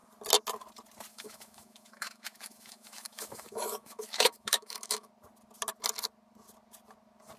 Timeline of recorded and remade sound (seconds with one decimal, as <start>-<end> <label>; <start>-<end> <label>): 0.0-1.1 recorded; 1.1-5.1 remade; 5.1-7.4 recorded